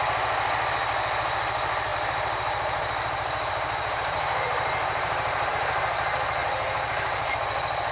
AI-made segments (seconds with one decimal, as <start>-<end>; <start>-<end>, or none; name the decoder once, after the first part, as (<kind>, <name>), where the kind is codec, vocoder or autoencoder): 1.9-5.5 (vocoder, BigVGAN v2); 6.4-7.3